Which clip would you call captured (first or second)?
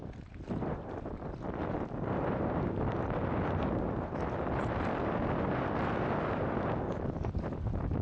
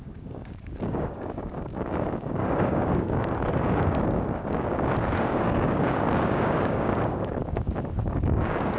first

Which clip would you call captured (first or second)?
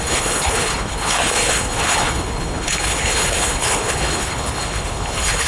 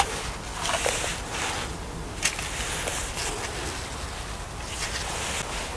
second